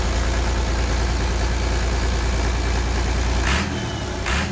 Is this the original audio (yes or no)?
yes